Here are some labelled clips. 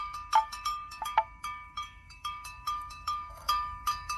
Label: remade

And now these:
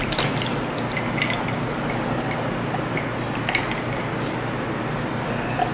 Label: recorded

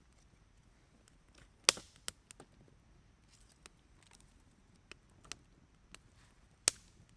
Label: recorded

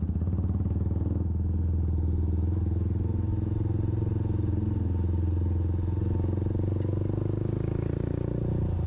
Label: recorded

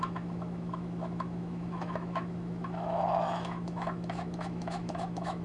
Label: remade